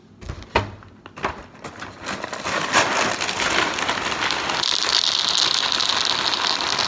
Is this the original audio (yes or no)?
yes